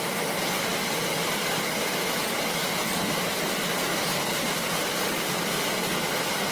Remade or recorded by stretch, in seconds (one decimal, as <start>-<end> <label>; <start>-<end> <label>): 0.0-6.5 recorded